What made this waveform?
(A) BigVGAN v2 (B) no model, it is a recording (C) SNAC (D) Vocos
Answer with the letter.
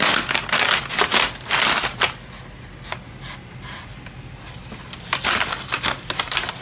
B